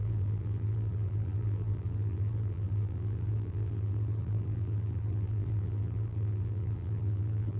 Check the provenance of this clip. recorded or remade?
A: remade